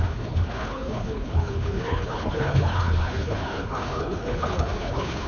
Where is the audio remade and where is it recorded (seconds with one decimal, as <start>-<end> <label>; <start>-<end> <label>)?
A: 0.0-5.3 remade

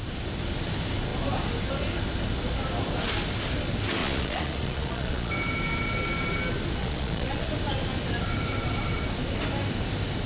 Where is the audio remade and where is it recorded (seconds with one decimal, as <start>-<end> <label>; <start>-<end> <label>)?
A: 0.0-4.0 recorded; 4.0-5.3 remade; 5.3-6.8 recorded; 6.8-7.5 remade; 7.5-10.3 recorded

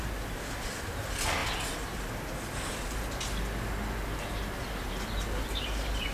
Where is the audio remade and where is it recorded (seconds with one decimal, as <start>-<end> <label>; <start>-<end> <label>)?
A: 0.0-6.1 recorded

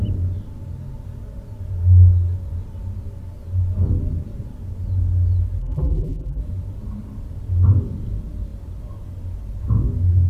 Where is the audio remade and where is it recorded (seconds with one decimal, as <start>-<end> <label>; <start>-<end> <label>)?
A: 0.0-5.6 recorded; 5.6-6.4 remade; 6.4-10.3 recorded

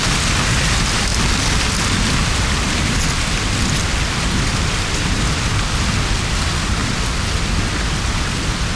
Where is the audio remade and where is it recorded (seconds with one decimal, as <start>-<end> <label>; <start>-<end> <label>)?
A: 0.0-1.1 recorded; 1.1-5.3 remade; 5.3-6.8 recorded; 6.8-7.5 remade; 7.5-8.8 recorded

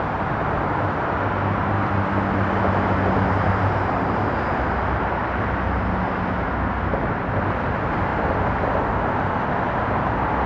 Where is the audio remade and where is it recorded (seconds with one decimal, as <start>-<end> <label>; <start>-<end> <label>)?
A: 0.0-10.5 recorded

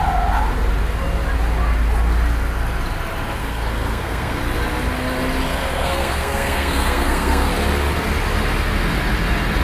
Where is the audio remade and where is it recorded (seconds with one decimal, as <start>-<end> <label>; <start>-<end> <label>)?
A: 0.0-3.4 recorded; 3.4-4.4 remade; 4.4-5.5 recorded; 5.5-7.5 remade; 7.5-9.6 recorded

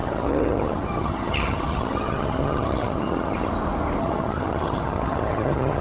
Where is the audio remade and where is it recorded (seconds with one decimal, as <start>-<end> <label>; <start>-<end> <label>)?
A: 0.0-3.5 remade; 3.5-4.0 recorded; 4.0-5.8 remade